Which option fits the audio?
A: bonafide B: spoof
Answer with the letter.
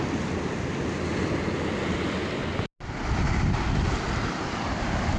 A